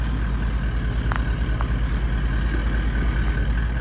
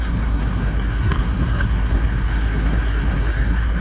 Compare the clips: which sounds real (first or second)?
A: first